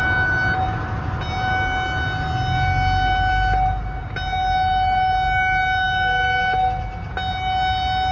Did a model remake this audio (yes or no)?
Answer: no